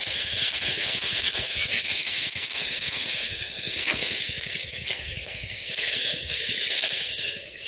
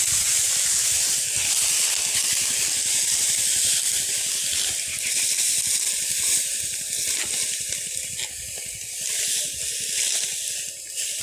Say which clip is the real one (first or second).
second